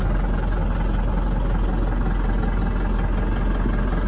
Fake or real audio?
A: real